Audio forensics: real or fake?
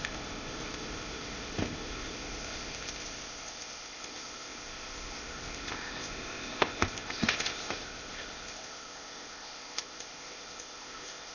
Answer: fake